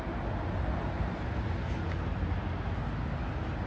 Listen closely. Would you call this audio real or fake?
real